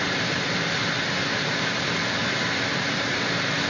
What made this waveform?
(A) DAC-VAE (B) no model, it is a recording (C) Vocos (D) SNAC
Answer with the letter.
B